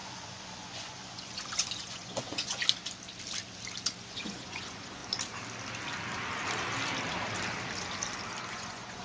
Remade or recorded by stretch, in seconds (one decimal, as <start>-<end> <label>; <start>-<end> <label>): 0.0-2.6 remade; 2.6-4.1 recorded; 4.1-5.0 remade; 5.0-8.5 recorded; 8.5-9.0 remade